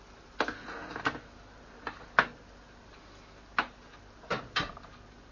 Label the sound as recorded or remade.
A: recorded